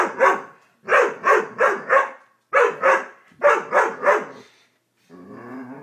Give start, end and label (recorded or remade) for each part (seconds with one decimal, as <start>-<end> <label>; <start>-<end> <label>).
0.0-5.8 recorded